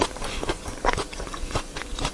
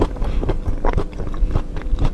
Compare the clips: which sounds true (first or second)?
second